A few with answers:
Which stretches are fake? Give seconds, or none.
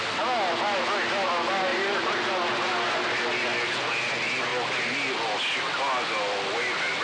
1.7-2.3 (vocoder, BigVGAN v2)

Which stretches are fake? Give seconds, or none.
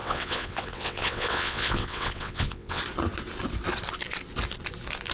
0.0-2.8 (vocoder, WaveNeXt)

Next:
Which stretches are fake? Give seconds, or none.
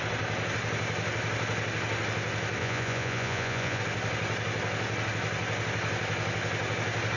2.6-3.8 (vocoder, Vocos)